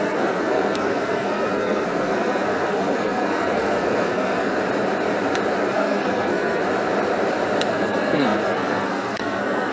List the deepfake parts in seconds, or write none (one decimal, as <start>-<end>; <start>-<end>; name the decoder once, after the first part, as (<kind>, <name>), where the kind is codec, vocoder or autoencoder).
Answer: 0.0-4.5 (codec, SNAC); 5.6-6.6; 7.7-9.7

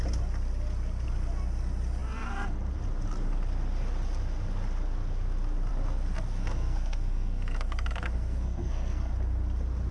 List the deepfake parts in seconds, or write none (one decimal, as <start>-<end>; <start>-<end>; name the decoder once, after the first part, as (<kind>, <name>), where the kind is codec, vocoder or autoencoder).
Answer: 6.4-9.1 (codec, SNAC)

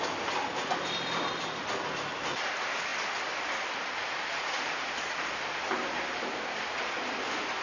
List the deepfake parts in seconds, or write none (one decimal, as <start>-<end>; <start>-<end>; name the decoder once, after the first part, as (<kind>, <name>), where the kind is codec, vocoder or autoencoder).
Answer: none

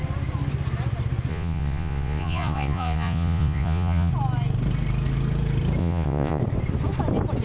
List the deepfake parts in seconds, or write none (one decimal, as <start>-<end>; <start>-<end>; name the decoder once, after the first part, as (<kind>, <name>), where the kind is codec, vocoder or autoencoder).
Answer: 1.3-4.1 (vocoder, Vocos); 5.8-6.4